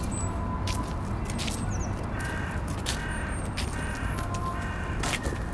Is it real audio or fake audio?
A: real